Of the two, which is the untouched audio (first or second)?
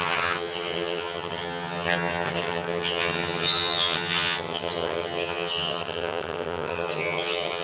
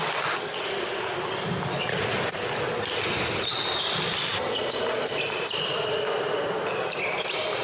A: second